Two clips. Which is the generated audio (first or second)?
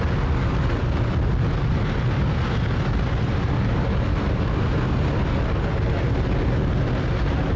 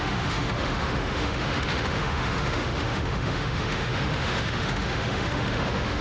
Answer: second